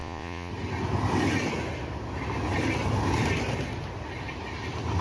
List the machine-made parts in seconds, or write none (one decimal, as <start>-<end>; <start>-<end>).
0.0-0.5